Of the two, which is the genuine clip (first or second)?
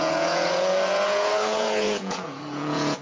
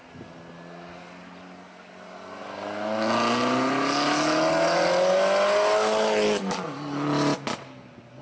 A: second